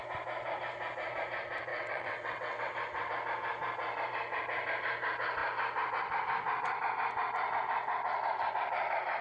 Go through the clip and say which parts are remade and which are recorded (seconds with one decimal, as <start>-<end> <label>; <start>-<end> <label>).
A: 0.0-1.7 recorded; 1.7-3.1 remade; 3.1-9.2 recorded